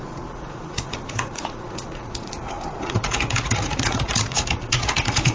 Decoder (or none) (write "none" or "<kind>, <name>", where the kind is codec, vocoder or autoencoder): vocoder, Vocos